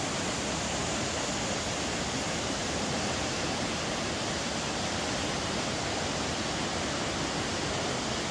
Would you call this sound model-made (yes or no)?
no